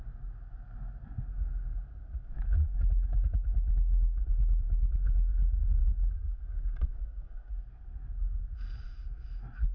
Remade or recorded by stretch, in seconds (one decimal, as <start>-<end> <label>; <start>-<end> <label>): 0.0-5.8 recorded; 5.8-7.5 remade; 7.5-9.7 recorded